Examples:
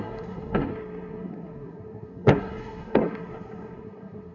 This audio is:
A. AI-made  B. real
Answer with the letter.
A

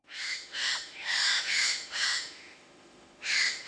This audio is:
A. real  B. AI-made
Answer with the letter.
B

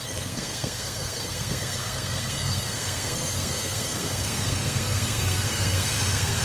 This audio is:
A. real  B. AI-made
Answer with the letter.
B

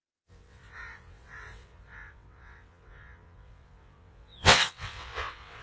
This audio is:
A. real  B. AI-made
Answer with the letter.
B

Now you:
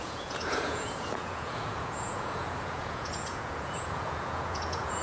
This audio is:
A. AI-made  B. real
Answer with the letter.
A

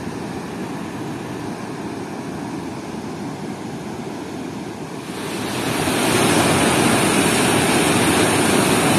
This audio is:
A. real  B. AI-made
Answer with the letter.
A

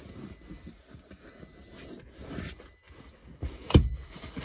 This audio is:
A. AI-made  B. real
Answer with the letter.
B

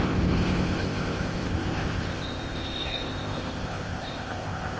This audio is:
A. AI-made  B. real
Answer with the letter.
A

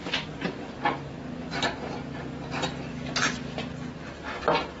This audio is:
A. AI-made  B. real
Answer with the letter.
B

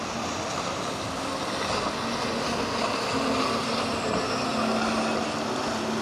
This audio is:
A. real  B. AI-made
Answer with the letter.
A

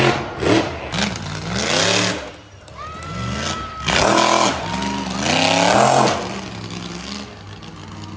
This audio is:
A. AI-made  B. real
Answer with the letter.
B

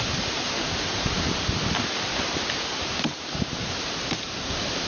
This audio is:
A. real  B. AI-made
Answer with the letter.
B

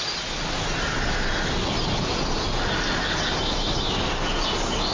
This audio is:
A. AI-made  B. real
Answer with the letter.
B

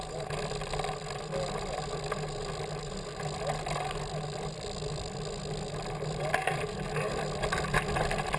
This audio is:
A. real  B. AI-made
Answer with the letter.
A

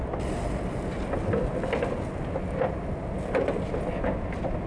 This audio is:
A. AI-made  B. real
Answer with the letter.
B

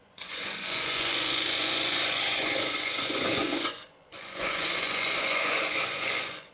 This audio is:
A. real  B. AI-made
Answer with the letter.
B